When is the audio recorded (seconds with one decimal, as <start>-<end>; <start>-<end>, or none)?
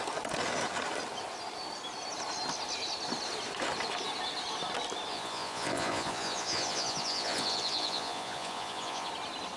0.0-5.1; 9.1-9.6